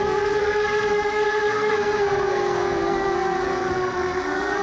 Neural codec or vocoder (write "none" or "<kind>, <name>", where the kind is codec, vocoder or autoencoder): codec, SNAC